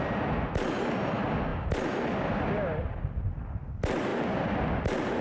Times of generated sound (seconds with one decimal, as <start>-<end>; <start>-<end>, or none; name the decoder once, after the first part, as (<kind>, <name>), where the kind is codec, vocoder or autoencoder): none